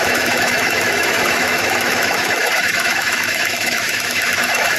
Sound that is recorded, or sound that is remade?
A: remade